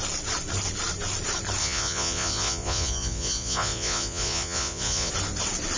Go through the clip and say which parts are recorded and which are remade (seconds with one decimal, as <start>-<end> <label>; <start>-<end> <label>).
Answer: 0.0-1.6 recorded; 1.6-5.1 remade; 5.1-5.8 recorded